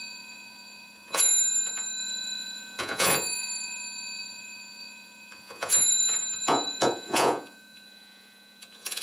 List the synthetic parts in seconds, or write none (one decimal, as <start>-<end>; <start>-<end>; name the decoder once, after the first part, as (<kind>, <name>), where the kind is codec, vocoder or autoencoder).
0.0-9.0 (vocoder, Vocos)